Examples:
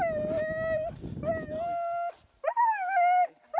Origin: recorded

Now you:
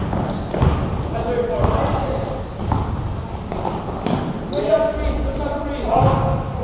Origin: recorded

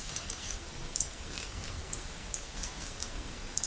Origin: remade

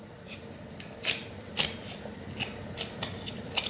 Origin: recorded